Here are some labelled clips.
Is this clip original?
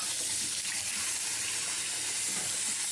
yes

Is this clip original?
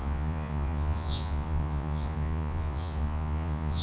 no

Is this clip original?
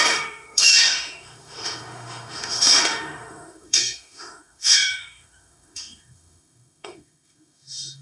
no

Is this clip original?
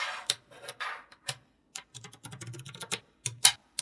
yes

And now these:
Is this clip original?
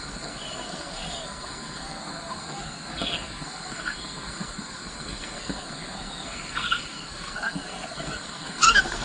no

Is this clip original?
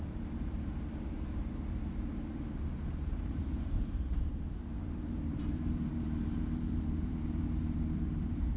no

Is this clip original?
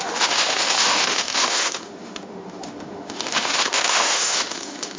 no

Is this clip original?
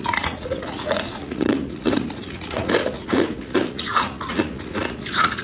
no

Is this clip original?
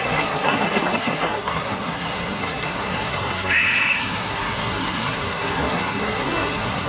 no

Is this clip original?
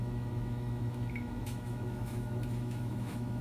no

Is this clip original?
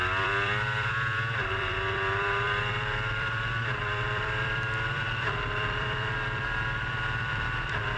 no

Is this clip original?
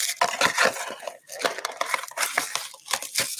yes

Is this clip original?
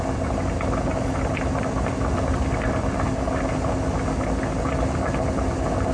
yes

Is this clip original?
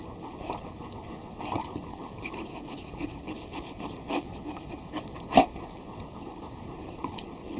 no